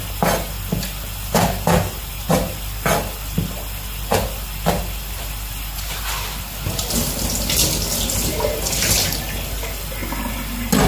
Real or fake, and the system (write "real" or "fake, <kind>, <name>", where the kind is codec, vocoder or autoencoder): real